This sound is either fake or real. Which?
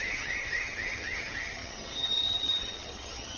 fake